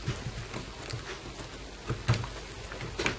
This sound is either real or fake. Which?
real